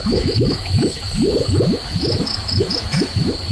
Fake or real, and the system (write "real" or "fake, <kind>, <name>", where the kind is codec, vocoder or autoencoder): fake, autoencoder, DAC-VAE